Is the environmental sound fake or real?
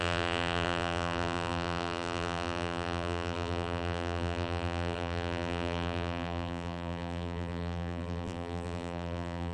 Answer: fake